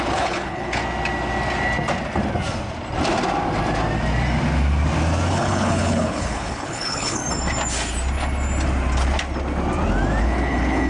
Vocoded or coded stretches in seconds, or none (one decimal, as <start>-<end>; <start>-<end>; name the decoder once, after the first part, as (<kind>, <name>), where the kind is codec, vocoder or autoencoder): 0.0-0.8 (codec, HILCodec); 5.3-7.2; 10.2-10.9